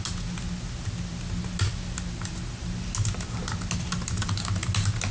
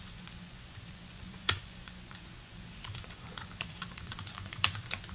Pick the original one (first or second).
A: first